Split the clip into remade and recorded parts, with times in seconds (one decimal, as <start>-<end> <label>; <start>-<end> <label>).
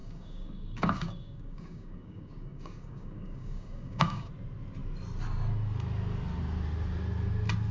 0.0-4.3 remade; 4.3-7.7 recorded